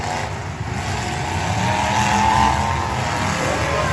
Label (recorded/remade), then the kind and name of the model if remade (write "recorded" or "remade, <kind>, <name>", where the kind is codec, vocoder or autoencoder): recorded